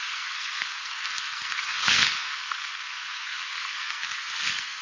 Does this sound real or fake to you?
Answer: fake